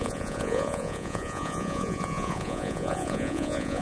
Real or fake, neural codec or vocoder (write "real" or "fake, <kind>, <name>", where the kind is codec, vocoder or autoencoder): fake, vocoder, Vocos